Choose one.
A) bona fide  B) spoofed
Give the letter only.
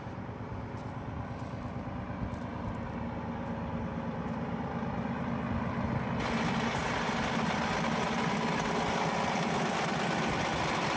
A